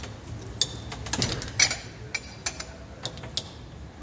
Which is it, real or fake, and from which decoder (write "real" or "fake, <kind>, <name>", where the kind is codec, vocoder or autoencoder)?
real